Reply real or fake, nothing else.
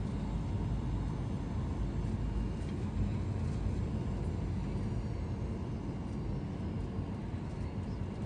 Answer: real